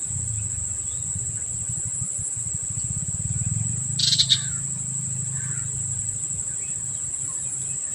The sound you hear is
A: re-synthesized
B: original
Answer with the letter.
B